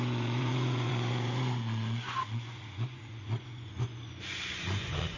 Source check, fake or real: fake